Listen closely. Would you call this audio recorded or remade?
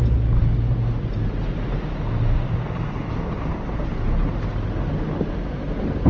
recorded